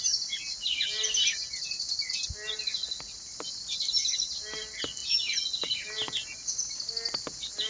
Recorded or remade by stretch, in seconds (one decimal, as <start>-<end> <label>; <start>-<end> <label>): 0.0-7.7 recorded